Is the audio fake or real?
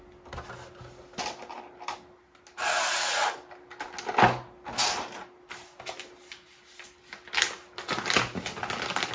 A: real